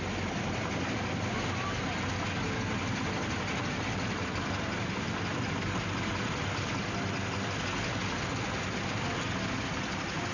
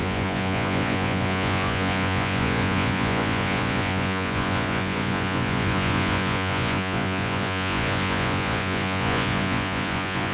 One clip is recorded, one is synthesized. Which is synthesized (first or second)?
second